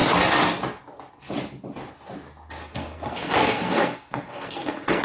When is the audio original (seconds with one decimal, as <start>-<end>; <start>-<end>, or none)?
0.0-2.7